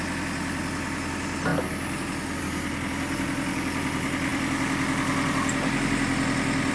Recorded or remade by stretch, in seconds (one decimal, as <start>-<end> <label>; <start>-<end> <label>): 0.0-6.7 recorded